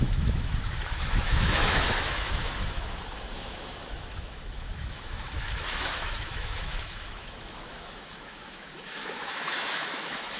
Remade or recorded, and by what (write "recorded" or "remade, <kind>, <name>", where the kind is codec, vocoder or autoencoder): remade, autoencoder, DAC-VAE